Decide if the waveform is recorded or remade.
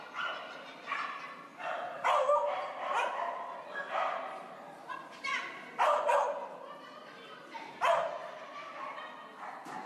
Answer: recorded